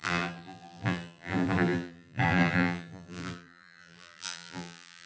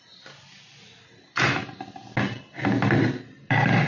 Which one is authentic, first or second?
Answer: second